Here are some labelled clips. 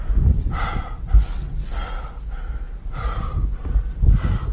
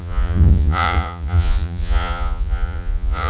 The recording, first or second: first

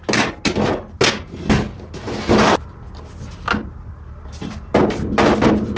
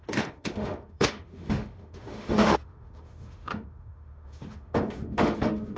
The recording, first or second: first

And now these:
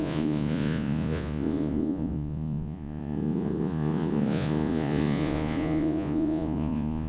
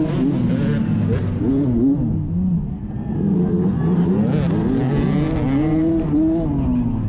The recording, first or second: second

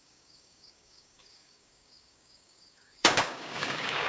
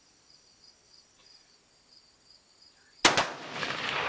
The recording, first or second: second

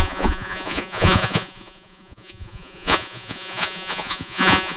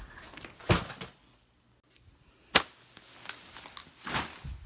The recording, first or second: second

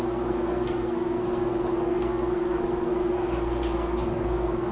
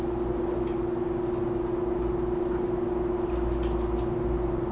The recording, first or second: second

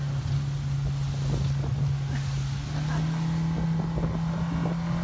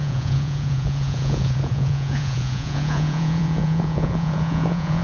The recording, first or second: first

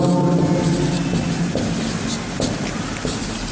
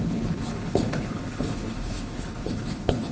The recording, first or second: first